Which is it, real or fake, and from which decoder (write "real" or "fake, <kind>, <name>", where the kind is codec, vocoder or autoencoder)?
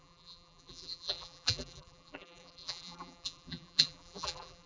fake, vocoder, BigVGAN v2